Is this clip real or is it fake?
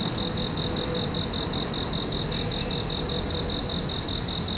real